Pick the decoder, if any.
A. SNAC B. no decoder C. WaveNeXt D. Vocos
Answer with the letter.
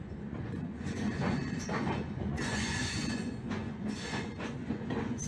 D